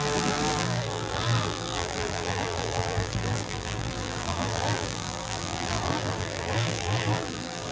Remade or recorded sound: remade